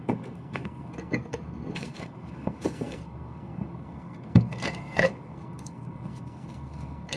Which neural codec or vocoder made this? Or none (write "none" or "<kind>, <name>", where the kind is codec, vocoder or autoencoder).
codec, SNAC